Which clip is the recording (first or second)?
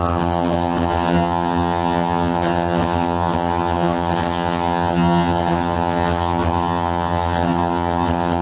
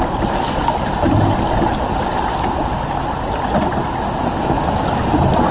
second